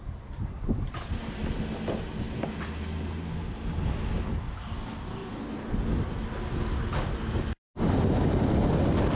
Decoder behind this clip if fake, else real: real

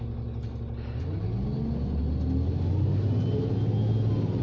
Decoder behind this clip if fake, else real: real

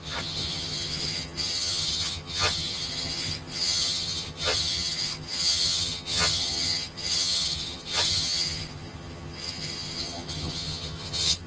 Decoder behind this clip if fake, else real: fake, vocoder, HiFi-GAN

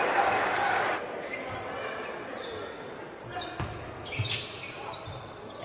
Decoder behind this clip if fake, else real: real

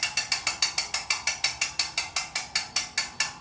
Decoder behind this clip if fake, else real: real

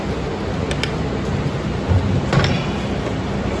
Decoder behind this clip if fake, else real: real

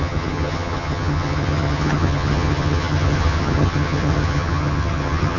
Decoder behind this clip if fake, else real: fake, vocoder, HiFi-GAN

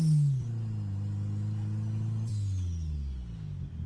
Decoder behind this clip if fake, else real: real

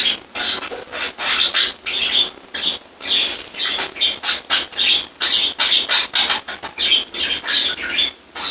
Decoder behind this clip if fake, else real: real